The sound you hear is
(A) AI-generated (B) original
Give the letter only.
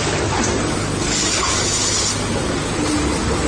B